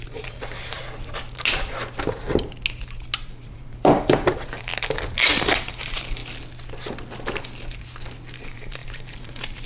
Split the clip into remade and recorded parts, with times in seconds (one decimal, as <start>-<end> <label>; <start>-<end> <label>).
0.0-0.8 remade; 0.8-3.2 recorded; 3.2-4.7 remade; 4.7-5.4 recorded; 5.4-6.2 remade; 6.2-8.3 recorded; 8.3-9.7 remade